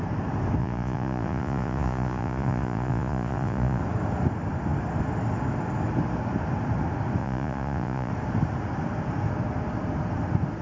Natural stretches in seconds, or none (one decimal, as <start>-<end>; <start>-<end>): 0.0-0.6; 3.8-7.2; 8.1-10.6